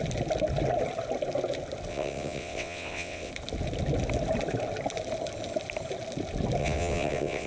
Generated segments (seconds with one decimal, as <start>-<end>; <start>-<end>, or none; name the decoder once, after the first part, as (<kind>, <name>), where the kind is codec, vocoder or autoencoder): 1.9-3.3 (vocoder, WaveNeXt); 6.6-7.5